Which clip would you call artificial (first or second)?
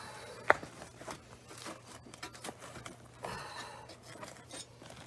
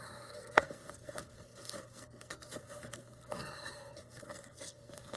second